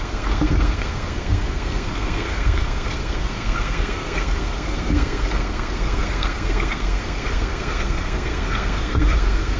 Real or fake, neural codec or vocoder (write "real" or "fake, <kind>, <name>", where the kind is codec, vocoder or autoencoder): fake, codec, SNAC